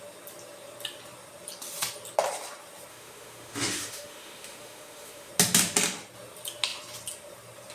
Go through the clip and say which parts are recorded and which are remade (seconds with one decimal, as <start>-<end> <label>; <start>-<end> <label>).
0.0-2.9 recorded; 2.9-5.3 remade; 5.3-7.7 recorded